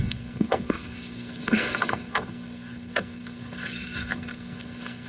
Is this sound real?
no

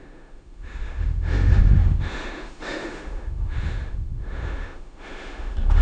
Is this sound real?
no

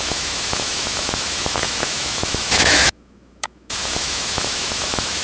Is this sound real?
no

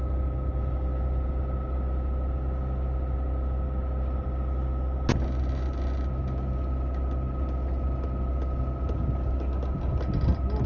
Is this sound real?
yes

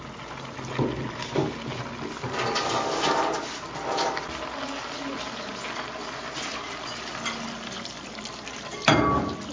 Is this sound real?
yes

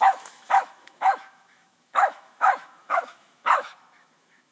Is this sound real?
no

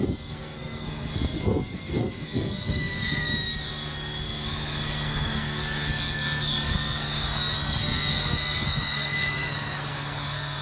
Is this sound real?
no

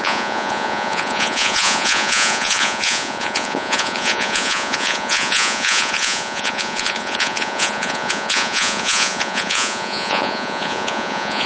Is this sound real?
no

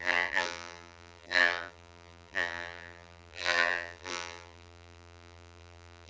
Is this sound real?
no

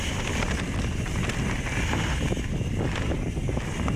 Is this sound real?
yes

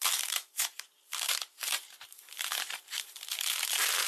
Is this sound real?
no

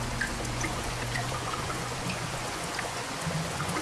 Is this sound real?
no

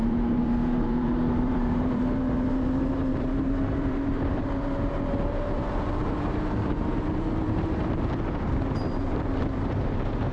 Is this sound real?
no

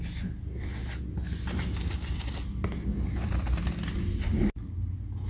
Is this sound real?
yes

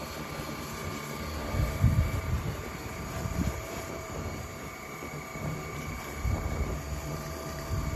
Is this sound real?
no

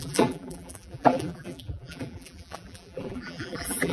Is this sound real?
no